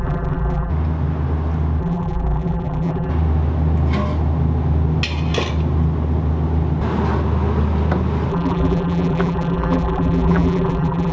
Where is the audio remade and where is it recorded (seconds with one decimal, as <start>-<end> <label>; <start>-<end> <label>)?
0.0-0.7 remade; 0.7-1.8 recorded; 1.8-3.1 remade; 3.1-8.3 recorded; 8.3-11.1 remade